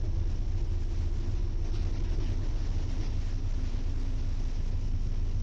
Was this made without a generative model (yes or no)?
yes